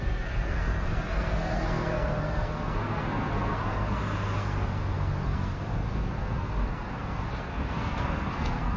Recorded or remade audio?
remade